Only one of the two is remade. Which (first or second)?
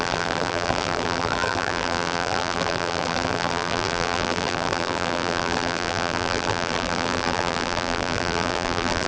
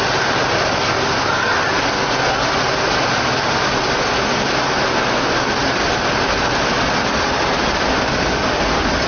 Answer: first